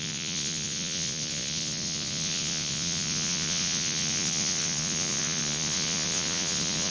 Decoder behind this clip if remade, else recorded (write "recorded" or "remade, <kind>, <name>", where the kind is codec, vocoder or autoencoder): remade, vocoder, Vocos